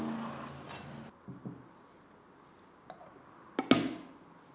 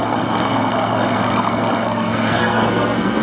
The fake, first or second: second